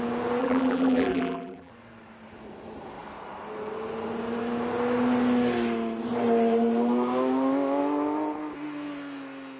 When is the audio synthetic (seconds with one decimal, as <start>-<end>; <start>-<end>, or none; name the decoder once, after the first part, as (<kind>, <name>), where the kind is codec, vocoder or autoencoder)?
0.4-1.7 (vocoder, BigVGAN v2)